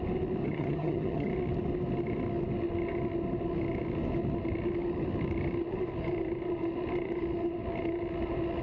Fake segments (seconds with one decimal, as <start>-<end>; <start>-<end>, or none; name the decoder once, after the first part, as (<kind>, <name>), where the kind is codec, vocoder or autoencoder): 0.4-1.3 (vocoder, HiFi-GAN)